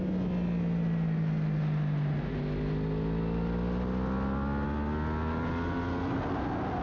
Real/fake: real